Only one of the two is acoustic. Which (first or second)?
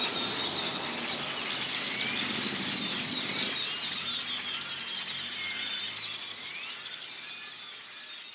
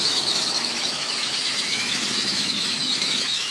first